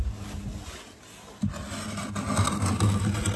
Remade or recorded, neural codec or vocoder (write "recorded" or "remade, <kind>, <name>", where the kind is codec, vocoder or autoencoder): recorded